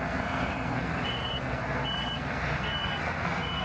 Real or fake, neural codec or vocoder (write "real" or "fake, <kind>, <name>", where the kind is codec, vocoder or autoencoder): fake, codec, SNAC